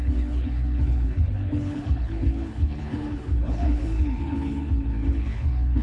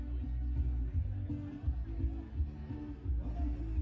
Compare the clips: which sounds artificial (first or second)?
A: first